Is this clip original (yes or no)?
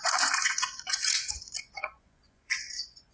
no